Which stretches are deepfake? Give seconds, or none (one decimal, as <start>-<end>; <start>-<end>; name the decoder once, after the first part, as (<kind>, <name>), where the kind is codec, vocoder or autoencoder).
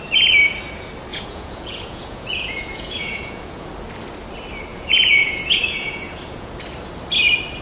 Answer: 1.1-3.7 (vocoder, Vocos); 4.7-6.5